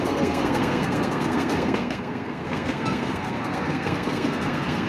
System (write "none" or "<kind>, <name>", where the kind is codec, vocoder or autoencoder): codec, SNAC